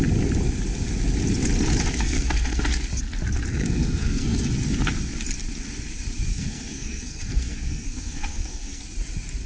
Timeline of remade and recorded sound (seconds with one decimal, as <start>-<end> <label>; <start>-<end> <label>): 0.0-1.9 recorded; 1.9-2.6 remade; 2.6-3.5 recorded; 3.5-4.5 remade; 4.5-6.3 recorded; 6.3-8.8 remade; 8.8-9.5 recorded